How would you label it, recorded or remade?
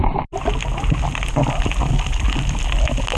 recorded